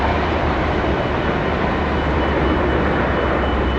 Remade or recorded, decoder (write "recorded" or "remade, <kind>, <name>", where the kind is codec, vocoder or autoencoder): recorded